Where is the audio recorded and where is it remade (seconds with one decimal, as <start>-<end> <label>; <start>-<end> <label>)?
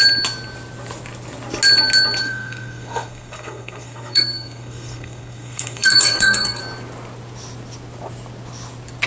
0.0-2.2 recorded; 2.2-6.6 remade; 6.6-9.1 recorded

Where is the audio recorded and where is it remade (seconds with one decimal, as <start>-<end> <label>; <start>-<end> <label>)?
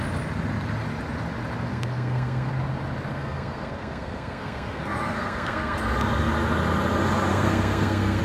0.0-1.7 recorded; 1.7-2.5 remade; 2.5-3.1 recorded; 3.1-5.8 remade; 5.8-7.3 recorded; 7.3-8.2 remade